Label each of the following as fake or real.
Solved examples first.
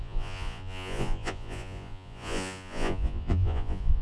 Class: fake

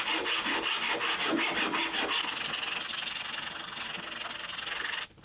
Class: real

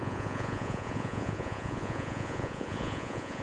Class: fake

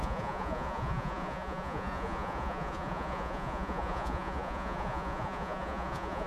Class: fake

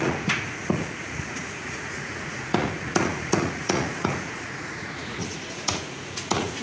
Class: fake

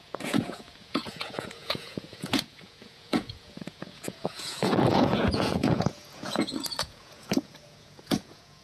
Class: fake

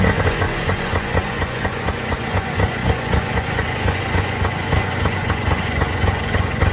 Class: fake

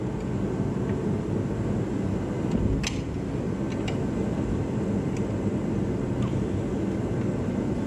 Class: real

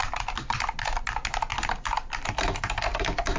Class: real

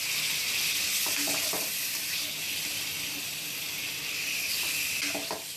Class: real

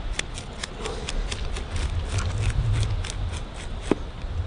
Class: real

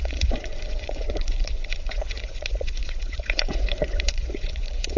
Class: fake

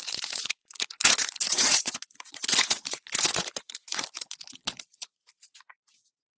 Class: fake